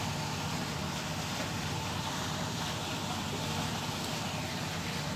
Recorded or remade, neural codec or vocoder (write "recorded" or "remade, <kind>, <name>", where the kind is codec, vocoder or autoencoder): recorded